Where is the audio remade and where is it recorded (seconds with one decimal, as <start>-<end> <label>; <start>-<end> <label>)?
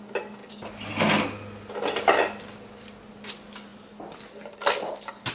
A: 0.0-5.3 recorded